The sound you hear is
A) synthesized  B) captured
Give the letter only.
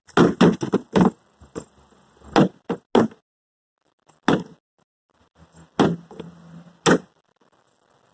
B